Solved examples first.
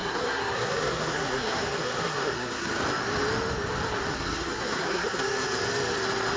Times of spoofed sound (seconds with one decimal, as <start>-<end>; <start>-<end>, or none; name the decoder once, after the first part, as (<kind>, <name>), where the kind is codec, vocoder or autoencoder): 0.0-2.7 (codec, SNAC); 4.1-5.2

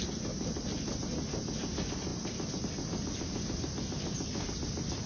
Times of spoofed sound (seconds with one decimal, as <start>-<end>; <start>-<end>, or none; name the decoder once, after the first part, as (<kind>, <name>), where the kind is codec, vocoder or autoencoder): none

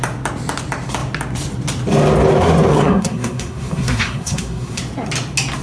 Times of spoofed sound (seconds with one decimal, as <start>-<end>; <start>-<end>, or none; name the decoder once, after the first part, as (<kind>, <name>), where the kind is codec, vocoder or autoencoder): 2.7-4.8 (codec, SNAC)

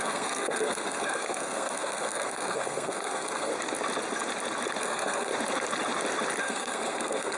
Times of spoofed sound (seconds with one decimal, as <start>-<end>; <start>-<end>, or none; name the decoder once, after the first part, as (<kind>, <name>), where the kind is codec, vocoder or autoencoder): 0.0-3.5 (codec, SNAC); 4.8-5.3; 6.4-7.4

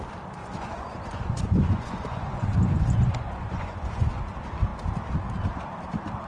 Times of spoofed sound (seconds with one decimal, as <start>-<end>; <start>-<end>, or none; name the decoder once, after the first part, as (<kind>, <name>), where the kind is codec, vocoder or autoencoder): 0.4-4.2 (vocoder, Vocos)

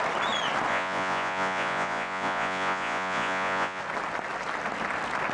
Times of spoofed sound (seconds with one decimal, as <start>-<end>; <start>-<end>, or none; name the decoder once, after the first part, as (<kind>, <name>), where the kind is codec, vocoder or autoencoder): 0.7-3.8 (vocoder, Vocos)